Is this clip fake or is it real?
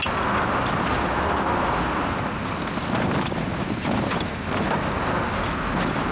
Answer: real